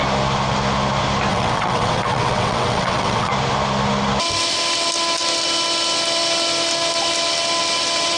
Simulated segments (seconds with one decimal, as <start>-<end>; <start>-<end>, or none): 1.3-3.3